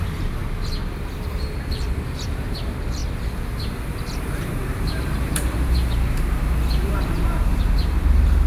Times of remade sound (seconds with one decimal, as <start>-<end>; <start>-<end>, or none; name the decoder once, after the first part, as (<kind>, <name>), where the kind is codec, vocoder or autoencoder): 0.0-3.0 (vocoder, BigVGAN v2); 4.2-8.5